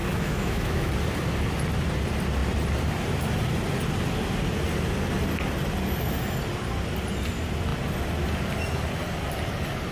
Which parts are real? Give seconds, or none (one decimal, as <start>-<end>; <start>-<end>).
0.9-9.9